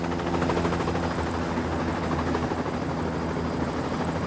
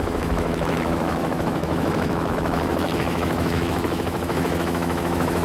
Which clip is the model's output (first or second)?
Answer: second